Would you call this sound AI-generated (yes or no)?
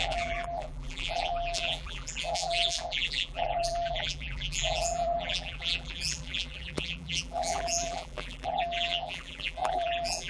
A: yes